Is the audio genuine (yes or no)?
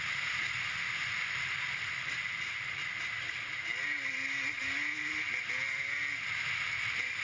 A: yes